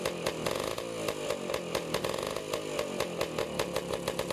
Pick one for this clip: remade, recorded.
recorded